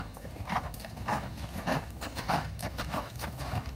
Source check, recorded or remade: remade